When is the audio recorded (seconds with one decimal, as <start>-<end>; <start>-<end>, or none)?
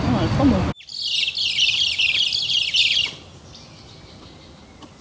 0.0-5.0